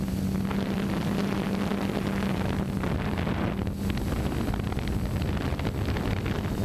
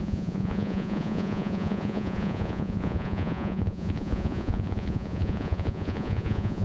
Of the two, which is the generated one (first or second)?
second